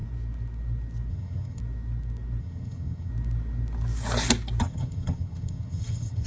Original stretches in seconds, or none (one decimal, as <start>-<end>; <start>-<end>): 0.0-1.1; 1.6-2.4; 3.1-4.6